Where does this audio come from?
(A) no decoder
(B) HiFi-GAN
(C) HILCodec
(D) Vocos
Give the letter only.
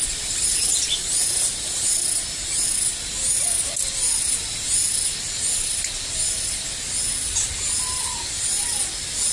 A